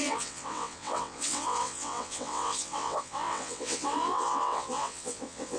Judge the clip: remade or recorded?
remade